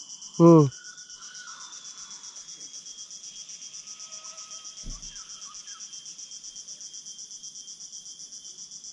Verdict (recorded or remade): recorded